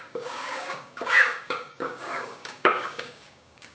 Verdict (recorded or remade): remade